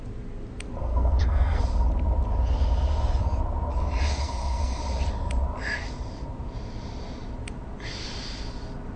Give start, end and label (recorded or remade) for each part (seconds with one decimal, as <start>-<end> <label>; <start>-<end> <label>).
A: 0.0-0.8 recorded; 0.8-1.6 remade; 1.6-4.2 recorded; 4.2-4.8 remade; 4.8-9.0 recorded